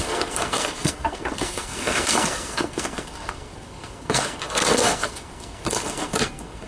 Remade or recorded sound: remade